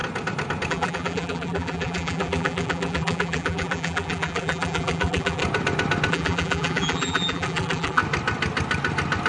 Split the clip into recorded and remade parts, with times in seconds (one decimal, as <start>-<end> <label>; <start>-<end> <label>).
0.0-0.7 recorded; 0.7-5.4 remade; 5.4-6.1 recorded; 6.1-8.0 remade; 8.0-9.3 recorded